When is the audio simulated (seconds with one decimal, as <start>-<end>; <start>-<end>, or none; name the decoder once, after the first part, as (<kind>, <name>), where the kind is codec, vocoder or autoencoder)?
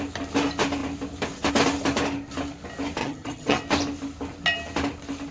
3.0-3.6 (vocoder, HiFi-GAN)